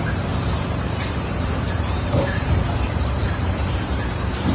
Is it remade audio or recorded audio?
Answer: remade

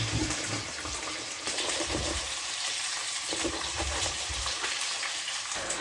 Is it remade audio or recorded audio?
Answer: remade